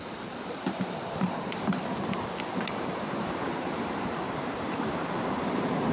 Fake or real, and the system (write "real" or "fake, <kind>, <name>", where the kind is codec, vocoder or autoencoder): fake, vocoder, BigVGAN v2